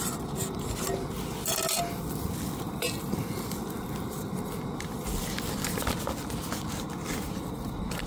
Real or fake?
real